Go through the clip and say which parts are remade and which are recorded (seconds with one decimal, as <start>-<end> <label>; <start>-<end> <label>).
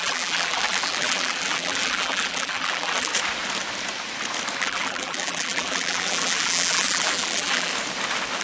0.0-3.1 remade; 3.1-4.6 recorded; 4.6-7.7 remade; 7.7-8.4 recorded